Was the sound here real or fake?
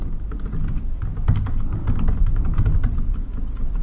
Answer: real